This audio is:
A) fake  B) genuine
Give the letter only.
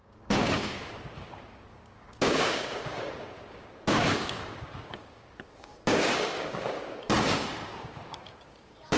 A